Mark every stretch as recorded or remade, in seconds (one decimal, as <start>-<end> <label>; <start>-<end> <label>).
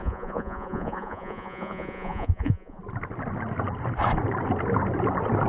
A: 0.0-2.8 remade; 2.8-5.5 recorded